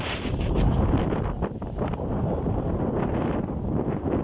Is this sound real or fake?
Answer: real